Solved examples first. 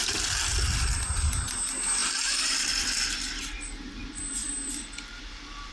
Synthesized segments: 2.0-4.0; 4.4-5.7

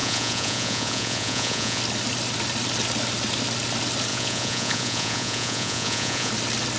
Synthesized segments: 0.0-1.8; 4.1-6.3

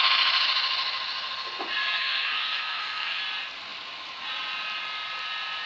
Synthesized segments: 1.8-3.2

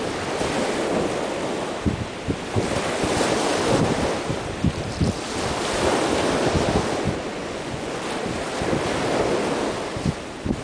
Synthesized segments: 7.4-8.0

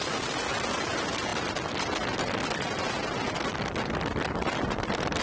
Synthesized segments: none

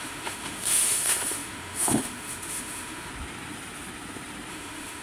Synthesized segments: 0.0-3.1; 4.5-5.0